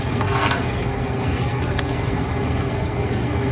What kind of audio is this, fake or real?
fake